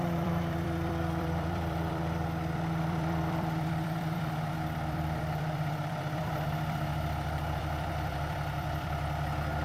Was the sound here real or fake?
fake